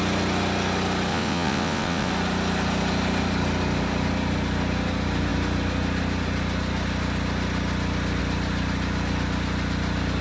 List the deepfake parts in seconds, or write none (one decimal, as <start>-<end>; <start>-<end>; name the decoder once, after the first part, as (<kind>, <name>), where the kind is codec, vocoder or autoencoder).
1.1-2.1 (vocoder, WaveNeXt)